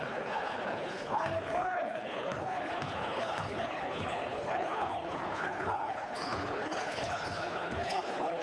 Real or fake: fake